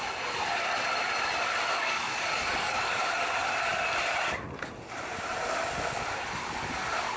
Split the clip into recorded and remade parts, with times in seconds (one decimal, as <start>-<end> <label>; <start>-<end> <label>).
0.0-1.7 recorded; 1.7-3.0 remade; 3.0-7.2 recorded